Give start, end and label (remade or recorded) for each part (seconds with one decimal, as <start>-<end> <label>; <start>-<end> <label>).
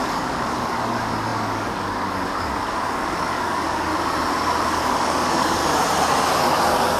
0.0-3.9 remade; 3.9-4.6 recorded; 4.6-5.6 remade; 5.6-6.4 recorded; 6.4-7.0 remade